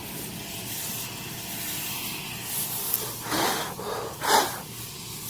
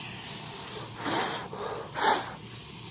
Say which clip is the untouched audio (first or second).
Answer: first